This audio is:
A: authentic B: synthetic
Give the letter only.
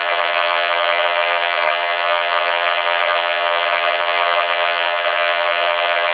B